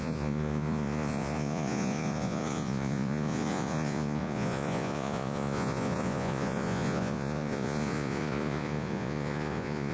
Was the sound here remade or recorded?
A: remade